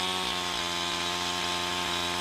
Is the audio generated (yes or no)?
no